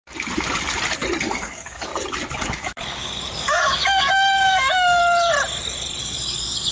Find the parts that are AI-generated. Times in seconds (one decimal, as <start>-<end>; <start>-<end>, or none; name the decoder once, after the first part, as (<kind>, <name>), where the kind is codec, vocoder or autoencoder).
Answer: 1.2-1.9 (codec, DAC); 2.5-5.0; 6.0-6.7